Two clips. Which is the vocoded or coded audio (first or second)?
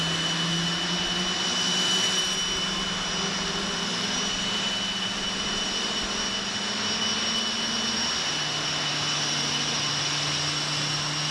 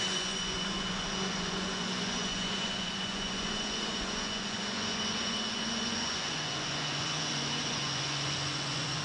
second